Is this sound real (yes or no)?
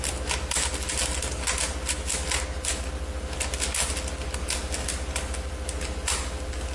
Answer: yes